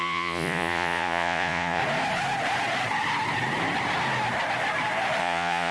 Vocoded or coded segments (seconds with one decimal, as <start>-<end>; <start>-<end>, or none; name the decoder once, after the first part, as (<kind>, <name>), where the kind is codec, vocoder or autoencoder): 0.0-1.8 (vocoder, Vocos); 5.2-5.7

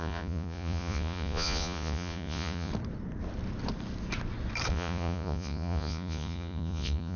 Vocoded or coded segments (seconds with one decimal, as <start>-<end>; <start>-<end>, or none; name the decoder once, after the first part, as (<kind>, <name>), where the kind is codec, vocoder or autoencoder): 0.0-2.7 (vocoder, Vocos); 4.7-7.2

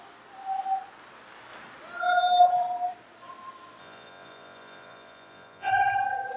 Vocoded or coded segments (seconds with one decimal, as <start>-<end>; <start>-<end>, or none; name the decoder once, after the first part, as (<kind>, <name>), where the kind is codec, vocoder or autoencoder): 3.8-5.7 (vocoder, Vocos)

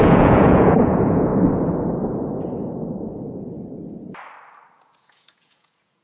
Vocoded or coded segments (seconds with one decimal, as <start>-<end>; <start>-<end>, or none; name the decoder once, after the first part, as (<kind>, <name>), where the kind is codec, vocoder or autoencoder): 0.0-1.3 (vocoder, Vocos); 4.7-6.0